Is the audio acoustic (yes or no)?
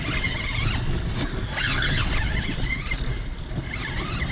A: yes